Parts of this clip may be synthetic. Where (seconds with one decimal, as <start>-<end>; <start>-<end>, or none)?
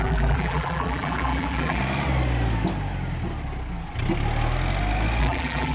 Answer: 0.0-1.8; 5.2-5.7